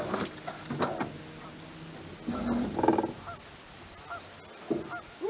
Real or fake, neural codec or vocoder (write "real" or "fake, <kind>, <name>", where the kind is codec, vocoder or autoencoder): real